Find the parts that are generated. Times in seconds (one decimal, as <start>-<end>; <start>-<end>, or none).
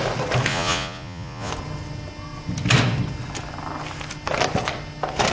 0.5-1.5